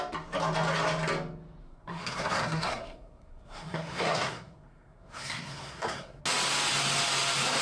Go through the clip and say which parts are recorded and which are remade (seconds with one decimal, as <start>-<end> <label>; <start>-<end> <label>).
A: 0.0-1.6 recorded; 1.6-6.2 remade; 6.2-7.6 recorded